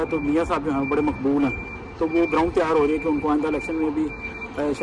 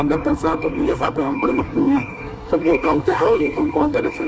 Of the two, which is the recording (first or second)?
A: first